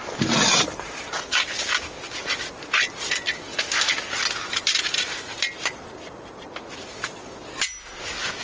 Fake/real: real